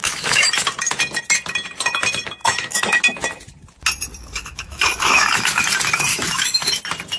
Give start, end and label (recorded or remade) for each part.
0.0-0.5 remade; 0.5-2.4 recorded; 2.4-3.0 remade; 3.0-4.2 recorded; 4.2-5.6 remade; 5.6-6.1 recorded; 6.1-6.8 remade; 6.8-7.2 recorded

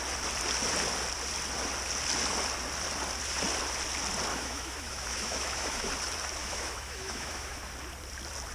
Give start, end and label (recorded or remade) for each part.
0.0-4.3 recorded; 4.3-5.9 remade; 5.9-6.4 recorded; 6.4-7.6 remade; 7.6-8.5 recorded

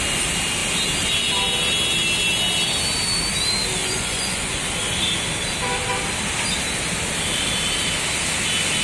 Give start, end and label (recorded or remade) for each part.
0.0-3.8 recorded; 3.8-4.6 remade; 4.6-8.8 recorded

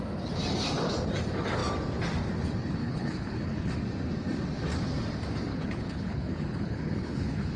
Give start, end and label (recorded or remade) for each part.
0.0-2.8 recorded; 2.8-3.7 remade; 3.7-5.5 recorded; 5.5-7.6 remade

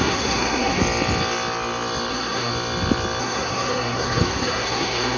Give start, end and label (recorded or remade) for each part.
0.0-0.8 remade; 0.8-2.1 recorded; 2.1-2.5 remade; 2.5-3.2 recorded; 3.2-5.2 remade

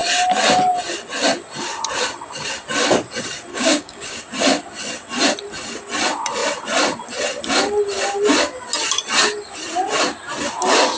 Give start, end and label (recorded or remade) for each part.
0.0-3.5 recorded; 3.5-4.2 remade; 4.2-11.0 recorded

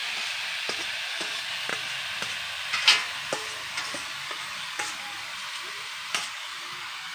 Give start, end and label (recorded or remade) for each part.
0.0-1.1 recorded; 1.1-1.7 remade; 1.7-3.7 recorded; 3.7-5.3 remade; 5.3-6.1 recorded; 6.1-7.1 remade

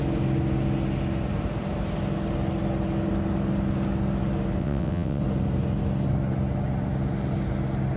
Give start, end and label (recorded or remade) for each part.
0.0-4.6 recorded; 4.6-5.2 remade; 5.2-8.0 recorded